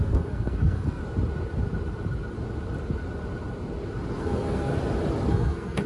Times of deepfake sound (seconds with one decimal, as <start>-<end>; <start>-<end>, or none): 0.0-1.0; 4.2-4.7; 5.3-5.9